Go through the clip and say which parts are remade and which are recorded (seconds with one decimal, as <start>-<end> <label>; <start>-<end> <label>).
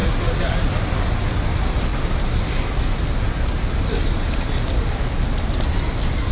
0.0-6.3 recorded